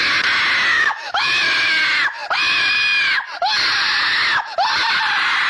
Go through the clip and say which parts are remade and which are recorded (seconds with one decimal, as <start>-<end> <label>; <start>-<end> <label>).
0.0-0.7 recorded; 0.7-1.3 remade; 1.3-5.5 recorded